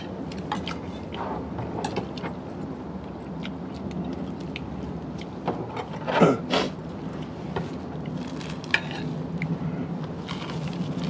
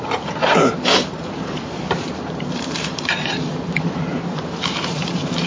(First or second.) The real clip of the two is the first